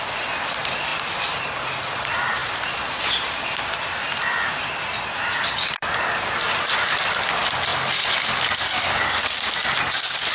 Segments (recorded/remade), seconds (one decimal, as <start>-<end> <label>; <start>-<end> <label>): 0.0-10.3 recorded